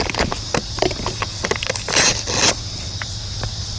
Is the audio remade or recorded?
recorded